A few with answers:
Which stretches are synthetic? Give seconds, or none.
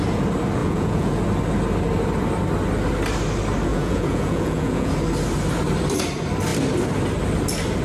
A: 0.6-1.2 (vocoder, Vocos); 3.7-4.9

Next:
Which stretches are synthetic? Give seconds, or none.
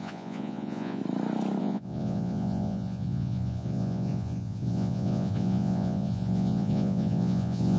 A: 0.0-1.0 (vocoder, Vocos); 1.6-7.8